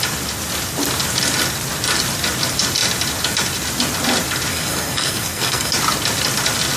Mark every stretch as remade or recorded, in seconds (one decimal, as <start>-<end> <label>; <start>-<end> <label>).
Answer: 0.0-4.5 recorded; 4.5-5.7 remade; 5.7-6.8 recorded